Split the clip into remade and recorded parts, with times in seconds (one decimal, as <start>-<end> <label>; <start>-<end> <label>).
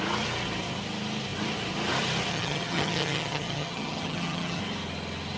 0.0-2.3 recorded; 2.3-4.6 remade; 4.6-5.4 recorded